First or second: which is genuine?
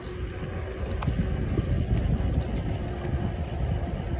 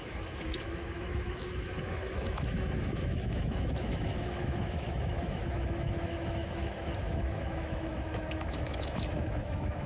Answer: first